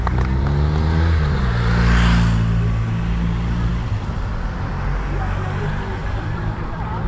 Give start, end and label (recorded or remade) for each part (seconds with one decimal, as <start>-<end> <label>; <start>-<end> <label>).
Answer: 0.0-3.7 recorded; 3.7-4.7 remade; 4.7-6.0 recorded; 6.0-7.1 remade